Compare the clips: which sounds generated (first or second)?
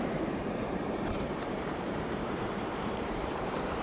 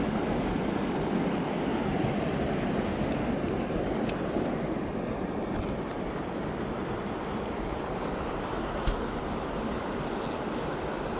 first